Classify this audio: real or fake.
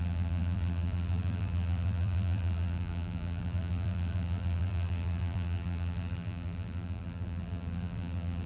fake